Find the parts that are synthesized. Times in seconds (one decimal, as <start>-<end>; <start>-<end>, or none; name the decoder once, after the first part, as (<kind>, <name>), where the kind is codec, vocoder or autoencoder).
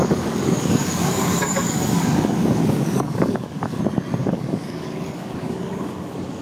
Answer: 0.0-3.8 (codec, DAC); 4.2-6.4